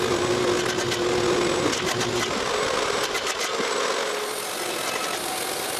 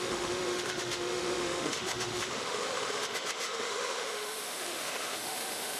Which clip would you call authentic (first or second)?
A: first